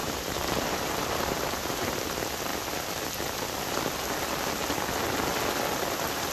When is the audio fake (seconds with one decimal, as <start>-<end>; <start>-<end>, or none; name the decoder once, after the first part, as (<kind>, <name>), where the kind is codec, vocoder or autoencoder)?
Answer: 0.0-2.0 (vocoder, BigVGAN v2)